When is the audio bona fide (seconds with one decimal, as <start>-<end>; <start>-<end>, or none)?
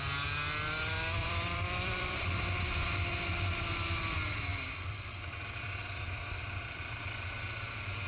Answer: 0.0-1.2; 2.6-4.5; 6.2-8.1